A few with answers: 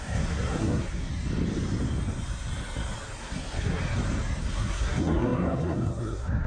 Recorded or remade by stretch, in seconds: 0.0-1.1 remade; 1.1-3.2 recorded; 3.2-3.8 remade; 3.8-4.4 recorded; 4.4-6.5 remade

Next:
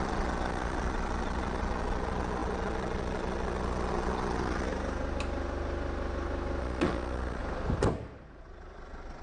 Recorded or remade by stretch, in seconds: 0.0-4.7 remade; 4.7-6.6 recorded; 6.6-7.4 remade; 7.4-8.4 recorded; 8.4-9.2 remade